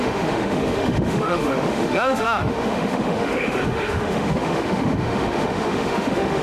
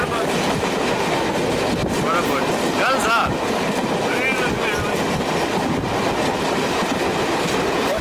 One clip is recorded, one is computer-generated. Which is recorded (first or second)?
second